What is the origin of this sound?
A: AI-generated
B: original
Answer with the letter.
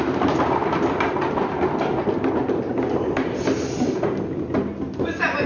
B